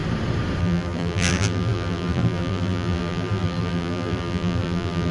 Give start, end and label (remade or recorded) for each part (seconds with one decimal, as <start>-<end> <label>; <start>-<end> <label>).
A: 0.0-0.6 recorded; 0.6-5.1 remade